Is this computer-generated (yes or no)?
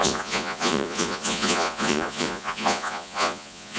yes